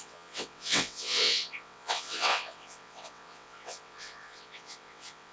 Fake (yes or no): yes